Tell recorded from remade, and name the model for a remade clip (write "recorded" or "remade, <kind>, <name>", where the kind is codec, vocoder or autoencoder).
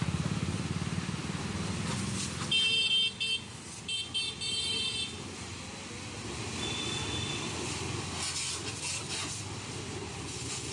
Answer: recorded